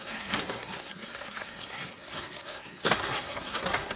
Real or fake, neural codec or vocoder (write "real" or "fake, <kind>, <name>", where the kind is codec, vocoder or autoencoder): fake, codec, SNAC